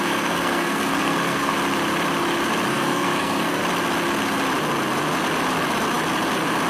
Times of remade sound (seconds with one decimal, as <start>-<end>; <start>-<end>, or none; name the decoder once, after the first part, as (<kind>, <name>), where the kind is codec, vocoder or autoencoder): 0.0-1.5 (codec, SNAC); 2.7-3.6